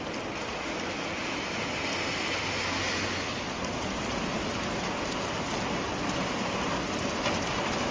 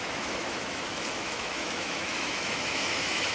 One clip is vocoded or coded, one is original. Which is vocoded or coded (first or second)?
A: second